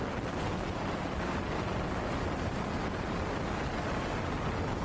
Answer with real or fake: real